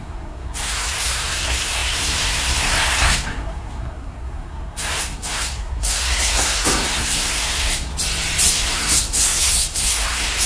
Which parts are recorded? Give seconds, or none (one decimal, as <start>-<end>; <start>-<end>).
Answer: 7.9-8.5